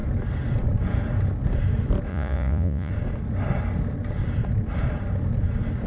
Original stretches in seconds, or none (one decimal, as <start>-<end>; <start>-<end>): 0.0-2.1; 2.9-5.9